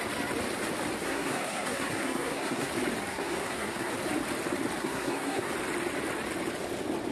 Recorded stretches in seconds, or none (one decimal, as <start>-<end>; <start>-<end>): 0.0-1.0; 2.7-3.1; 3.9-4.8; 5.5-7.1